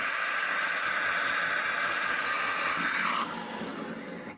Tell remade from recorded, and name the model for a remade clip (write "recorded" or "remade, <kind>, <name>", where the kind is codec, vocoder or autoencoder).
recorded